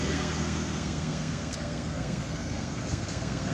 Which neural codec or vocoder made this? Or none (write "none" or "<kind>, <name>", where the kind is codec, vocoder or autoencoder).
codec, SNAC